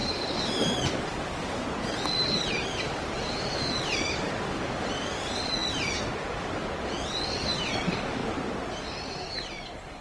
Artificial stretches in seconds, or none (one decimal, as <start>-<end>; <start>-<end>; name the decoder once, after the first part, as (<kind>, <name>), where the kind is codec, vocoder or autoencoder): 2.5-5.6 (vocoder, BigVGAN v2); 7.2-8.2; 8.7-10.0